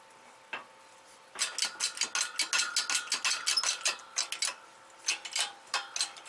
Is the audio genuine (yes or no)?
yes